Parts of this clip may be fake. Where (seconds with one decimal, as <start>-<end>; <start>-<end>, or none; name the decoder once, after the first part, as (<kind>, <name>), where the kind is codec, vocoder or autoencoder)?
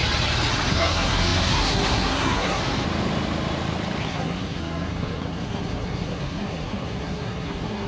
0.7-2.6 (codec, SNAC); 4.0-7.9